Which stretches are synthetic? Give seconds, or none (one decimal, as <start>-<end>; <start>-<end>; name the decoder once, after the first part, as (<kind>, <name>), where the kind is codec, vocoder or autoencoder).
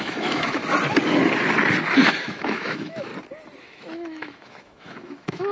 0.0-0.6 (autoencoder, DAC-VAE); 2.2-3.1; 3.6-5.5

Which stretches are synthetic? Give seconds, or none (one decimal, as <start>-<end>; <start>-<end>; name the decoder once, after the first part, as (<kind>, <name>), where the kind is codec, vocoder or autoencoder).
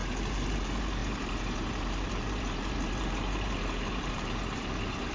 0.0-5.1 (vocoder, BigVGAN v2)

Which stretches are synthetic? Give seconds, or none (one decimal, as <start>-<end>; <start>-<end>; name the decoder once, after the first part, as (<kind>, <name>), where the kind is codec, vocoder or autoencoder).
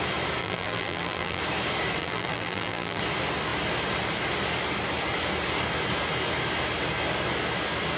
0.4-1.4 (vocoder, BigVGAN v2); 2.0-3.0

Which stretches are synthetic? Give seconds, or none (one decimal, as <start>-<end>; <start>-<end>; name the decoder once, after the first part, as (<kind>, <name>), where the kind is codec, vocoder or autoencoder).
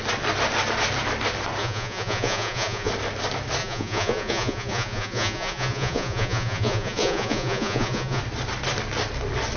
1.6-2.9 (vocoder, Vocos); 3.6-8.2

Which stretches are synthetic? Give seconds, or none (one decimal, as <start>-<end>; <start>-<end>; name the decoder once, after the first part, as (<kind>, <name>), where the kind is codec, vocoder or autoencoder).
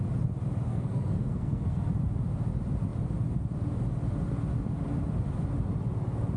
0.7-1.9 (codec, SNAC)